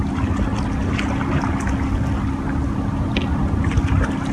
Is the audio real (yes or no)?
yes